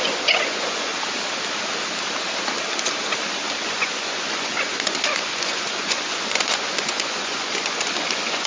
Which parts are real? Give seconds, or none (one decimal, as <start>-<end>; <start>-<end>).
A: 0.9-3.5